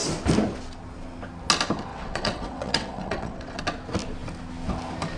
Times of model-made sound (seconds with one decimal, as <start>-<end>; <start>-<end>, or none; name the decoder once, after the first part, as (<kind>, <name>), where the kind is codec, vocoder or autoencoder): 1.9-3.6 (vocoder, WaveNeXt)